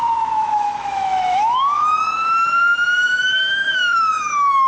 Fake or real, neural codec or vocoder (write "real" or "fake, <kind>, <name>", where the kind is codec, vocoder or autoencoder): fake, autoencoder, DAC-VAE